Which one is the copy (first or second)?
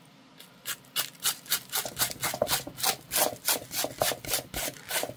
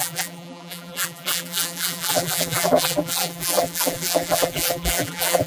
second